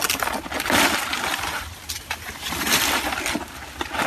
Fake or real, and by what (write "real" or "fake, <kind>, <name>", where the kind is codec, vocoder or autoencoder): real